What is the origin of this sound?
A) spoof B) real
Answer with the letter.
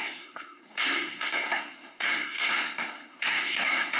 A